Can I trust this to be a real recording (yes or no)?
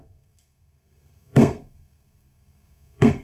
no